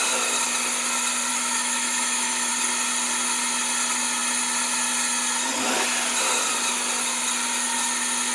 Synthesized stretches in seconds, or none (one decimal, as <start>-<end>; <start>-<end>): 1.3-2.5